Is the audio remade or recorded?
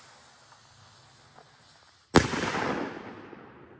recorded